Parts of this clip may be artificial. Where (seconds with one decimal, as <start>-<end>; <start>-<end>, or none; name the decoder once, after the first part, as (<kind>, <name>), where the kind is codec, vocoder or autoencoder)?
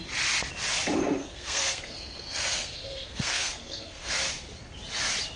1.2-4.1 (codec, SNAC)